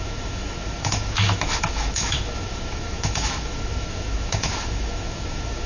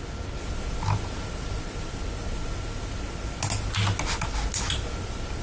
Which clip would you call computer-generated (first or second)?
first